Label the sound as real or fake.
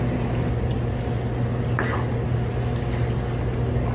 real